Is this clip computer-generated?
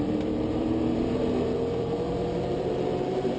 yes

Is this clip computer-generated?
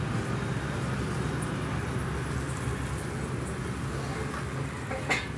no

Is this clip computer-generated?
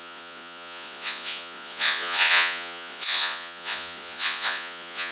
yes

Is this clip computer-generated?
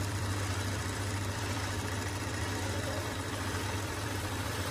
yes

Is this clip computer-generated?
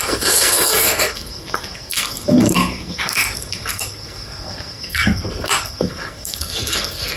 yes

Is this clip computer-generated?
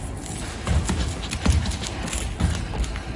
no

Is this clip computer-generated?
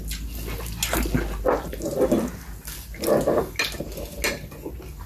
no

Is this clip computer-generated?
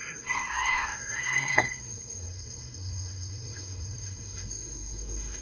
yes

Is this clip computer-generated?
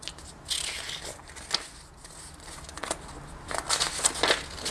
no